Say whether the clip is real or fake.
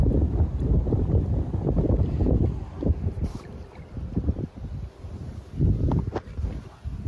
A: real